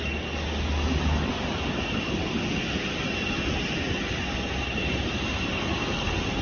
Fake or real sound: real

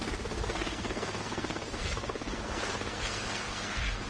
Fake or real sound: fake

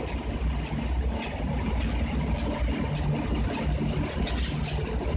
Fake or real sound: real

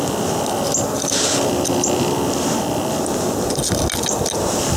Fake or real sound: real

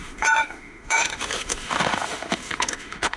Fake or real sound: fake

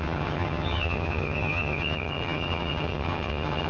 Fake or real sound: fake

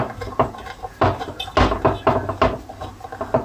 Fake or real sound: real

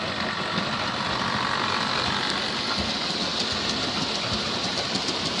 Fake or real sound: real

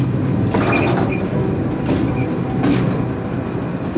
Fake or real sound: real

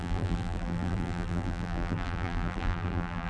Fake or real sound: fake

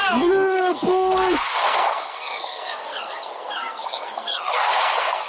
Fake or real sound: fake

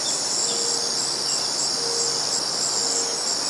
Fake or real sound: real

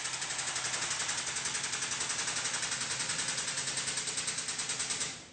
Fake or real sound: real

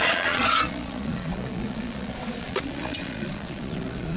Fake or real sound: fake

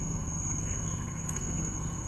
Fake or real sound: fake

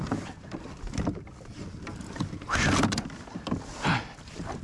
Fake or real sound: real